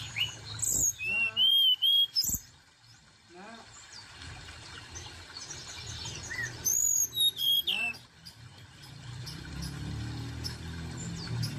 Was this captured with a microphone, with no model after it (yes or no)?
no